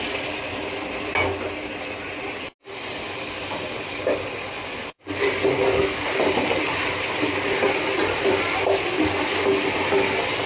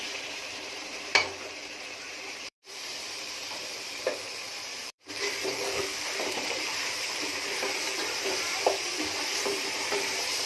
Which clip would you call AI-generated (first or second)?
second